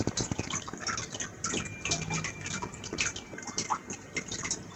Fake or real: real